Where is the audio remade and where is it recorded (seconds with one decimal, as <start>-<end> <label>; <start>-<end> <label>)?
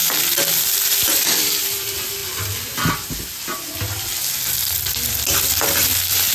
0.0-0.9 recorded; 0.9-2.2 remade; 2.2-4.9 recorded; 4.9-6.3 remade